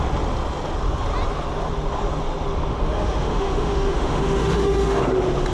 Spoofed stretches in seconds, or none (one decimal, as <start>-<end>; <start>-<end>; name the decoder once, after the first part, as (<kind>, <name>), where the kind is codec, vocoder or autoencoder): 2.7-5.0 (autoencoder, DAC-VAE)